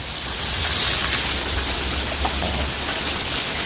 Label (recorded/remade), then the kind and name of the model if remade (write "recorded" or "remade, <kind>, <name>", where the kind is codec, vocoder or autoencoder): recorded